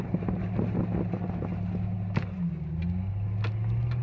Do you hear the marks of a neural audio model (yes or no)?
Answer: no